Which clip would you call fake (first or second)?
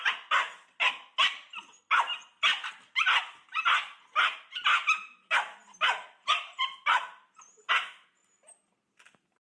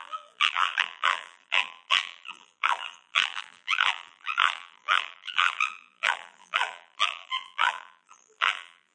second